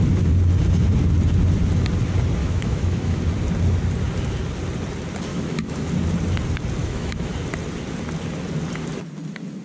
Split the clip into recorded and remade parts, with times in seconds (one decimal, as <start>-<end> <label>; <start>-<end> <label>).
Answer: 0.0-2.4 recorded; 2.4-3.2 remade; 3.2-5.3 recorded; 5.3-5.9 remade; 5.9-6.8 recorded; 6.8-7.3 remade; 7.3-9.6 recorded